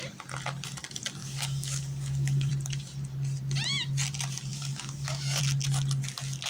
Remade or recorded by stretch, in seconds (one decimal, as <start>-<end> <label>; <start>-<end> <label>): 0.0-1.2 recorded; 1.2-2.5 remade; 2.5-4.5 recorded; 4.5-5.4 remade; 5.4-6.5 recorded